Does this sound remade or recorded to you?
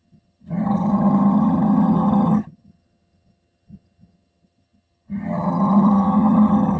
remade